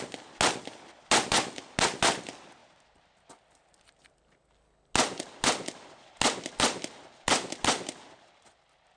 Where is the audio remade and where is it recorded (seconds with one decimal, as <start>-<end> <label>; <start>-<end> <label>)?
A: 0.0-9.0 recorded